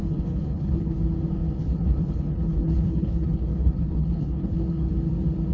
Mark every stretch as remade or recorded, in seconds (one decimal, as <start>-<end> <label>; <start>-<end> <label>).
0.0-1.0 remade; 1.0-1.6 recorded; 1.6-4.9 remade; 4.9-5.5 recorded